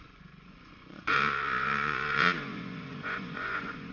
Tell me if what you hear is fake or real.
fake